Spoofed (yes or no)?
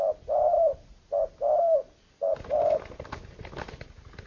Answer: no